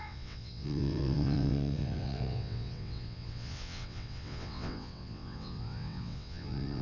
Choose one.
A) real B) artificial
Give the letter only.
B